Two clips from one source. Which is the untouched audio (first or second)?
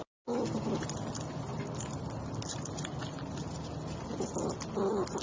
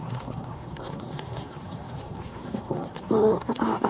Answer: first